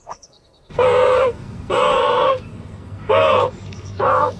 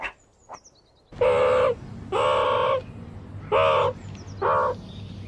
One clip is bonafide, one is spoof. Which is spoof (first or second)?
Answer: first